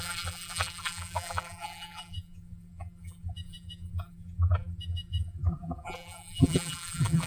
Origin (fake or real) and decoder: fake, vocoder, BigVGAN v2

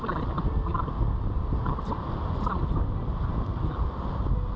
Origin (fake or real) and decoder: real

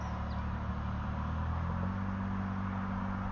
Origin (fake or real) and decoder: real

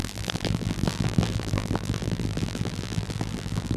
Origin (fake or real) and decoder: fake, vocoder, BigVGAN v2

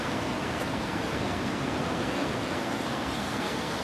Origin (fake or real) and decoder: fake, codec, SNAC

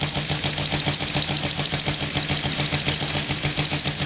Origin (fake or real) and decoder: real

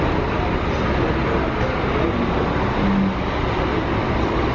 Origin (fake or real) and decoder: real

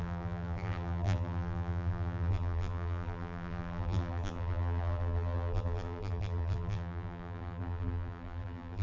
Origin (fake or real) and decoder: fake, vocoder, BigVGAN v2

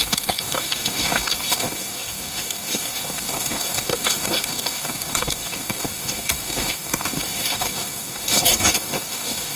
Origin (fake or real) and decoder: fake, codec, DAC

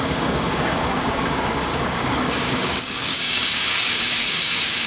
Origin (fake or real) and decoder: fake, codec, DAC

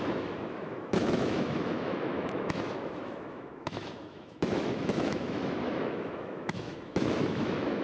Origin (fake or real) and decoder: fake, autoencoder, DAC-VAE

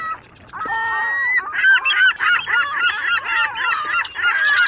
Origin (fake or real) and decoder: real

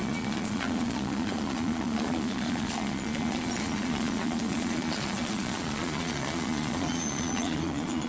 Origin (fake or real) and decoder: fake, vocoder, Vocos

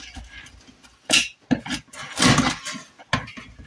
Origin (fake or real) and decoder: real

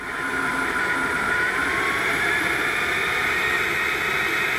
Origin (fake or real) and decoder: real